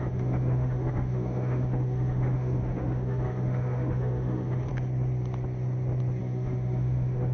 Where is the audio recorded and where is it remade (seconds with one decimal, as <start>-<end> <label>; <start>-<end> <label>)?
0.0-4.7 remade; 4.7-6.2 recorded; 6.2-7.3 remade